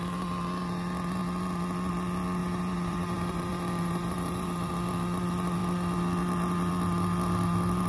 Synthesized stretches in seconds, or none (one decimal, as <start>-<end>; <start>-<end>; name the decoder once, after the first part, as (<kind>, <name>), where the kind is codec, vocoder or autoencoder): 2.4-4.7 (vocoder, BigVGAN v2)